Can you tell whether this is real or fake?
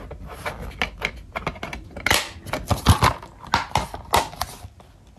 real